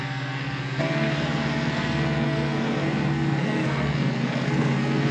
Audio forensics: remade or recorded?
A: remade